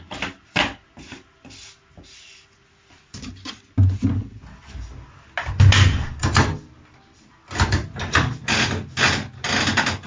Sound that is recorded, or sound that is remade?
recorded